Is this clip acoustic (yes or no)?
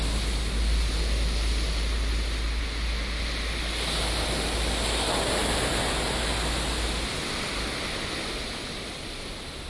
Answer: yes